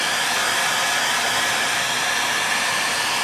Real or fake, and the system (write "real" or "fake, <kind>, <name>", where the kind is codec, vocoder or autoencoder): real